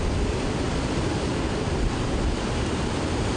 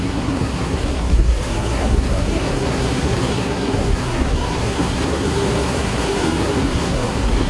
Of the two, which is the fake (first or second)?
second